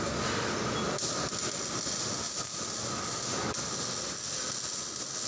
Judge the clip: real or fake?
real